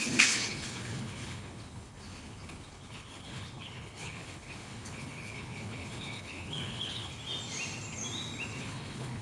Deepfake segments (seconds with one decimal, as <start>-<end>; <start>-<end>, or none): 0.0-7.1; 8.6-9.2